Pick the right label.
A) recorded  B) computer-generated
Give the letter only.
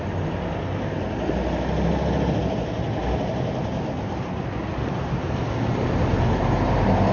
A